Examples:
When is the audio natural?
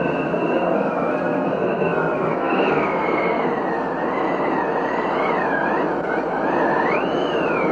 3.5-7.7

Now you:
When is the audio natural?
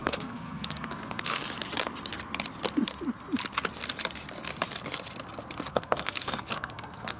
1.4-5.7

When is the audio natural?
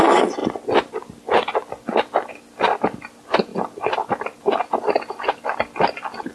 0.0-6.3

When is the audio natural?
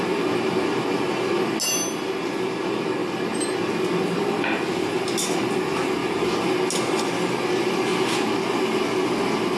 0.0-9.6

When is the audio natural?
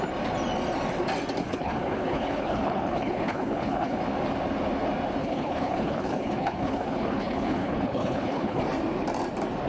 0.0-1.4; 4.0-5.2; 8.6-9.7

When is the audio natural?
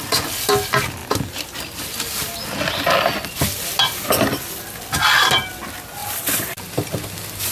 0.0-7.5